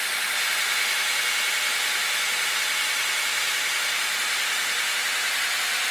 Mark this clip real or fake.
real